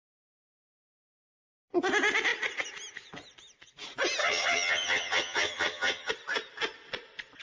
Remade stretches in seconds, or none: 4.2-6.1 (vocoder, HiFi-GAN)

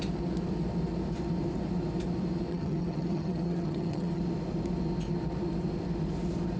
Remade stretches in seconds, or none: 2.5-4.2 (vocoder, HiFi-GAN)

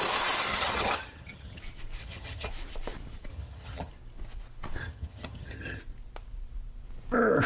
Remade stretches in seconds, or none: 0.5-1.6 (vocoder, HiFi-GAN); 2.0-2.5; 3.3-3.9; 4.8-5.8